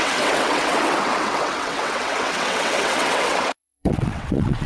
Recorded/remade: remade